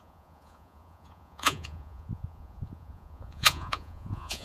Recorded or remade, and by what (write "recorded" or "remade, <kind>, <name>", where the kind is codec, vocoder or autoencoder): remade, vocoder, Vocos